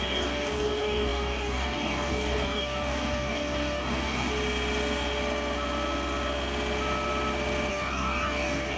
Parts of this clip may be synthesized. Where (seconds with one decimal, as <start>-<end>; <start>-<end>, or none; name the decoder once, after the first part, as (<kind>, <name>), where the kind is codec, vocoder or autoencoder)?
0.0-4.3 (codec, DAC); 7.7-8.8